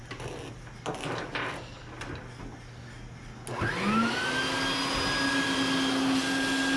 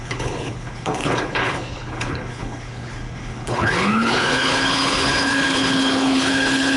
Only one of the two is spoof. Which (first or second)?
second